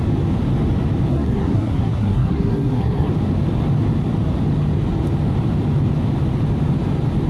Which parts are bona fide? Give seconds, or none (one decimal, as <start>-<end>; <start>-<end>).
0.0-1.1; 3.1-7.3